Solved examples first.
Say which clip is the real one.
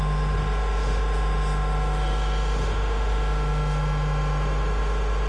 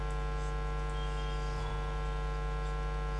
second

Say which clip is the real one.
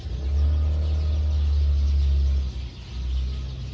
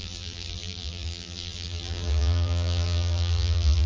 first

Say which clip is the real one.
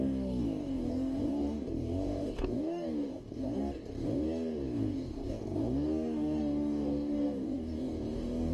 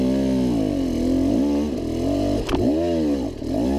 second